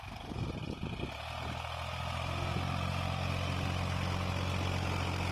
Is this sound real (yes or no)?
yes